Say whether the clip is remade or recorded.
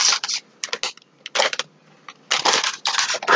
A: recorded